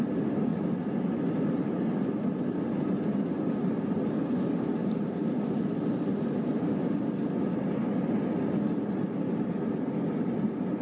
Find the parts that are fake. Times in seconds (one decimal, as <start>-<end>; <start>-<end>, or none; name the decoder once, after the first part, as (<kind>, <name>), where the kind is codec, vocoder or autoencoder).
none